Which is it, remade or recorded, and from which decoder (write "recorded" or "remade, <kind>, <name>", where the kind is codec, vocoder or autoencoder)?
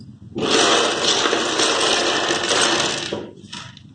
recorded